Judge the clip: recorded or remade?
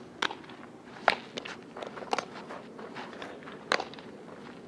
recorded